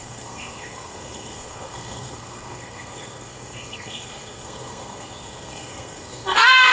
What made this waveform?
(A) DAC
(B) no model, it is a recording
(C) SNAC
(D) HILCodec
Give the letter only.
C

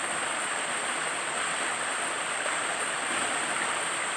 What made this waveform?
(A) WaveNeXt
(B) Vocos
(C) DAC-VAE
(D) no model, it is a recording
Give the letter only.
D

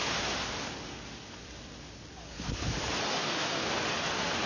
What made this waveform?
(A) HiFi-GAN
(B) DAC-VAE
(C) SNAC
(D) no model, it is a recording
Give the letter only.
D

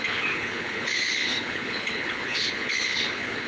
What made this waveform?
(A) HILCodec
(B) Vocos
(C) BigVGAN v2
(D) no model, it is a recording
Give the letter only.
A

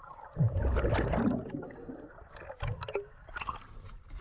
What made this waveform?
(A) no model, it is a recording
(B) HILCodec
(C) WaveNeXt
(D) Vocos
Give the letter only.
A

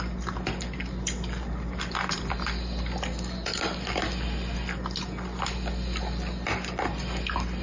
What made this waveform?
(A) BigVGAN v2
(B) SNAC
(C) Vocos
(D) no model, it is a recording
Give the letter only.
D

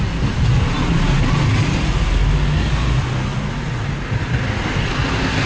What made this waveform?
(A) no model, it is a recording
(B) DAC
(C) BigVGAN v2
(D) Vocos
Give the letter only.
A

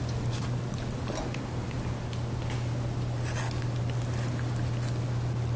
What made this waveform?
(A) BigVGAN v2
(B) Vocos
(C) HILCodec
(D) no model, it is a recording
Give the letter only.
D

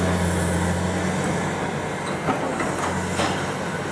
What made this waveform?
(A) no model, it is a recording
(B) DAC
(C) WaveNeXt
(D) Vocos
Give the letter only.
A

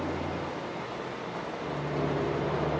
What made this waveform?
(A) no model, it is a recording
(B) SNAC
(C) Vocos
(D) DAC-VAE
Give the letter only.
A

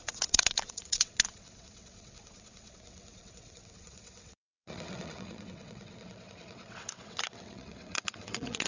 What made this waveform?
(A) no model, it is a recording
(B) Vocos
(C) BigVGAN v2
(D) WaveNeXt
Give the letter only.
D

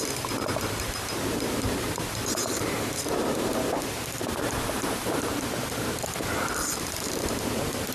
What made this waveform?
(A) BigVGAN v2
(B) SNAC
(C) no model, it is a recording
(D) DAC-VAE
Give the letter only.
A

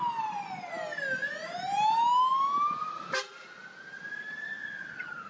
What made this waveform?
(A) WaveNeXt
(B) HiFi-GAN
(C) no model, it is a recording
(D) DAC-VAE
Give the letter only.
C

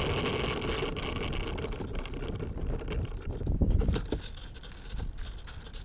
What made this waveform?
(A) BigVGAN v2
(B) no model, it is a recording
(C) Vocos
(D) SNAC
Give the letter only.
B